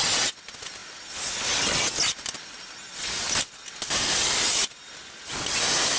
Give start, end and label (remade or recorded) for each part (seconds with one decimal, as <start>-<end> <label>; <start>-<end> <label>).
0.0-6.0 recorded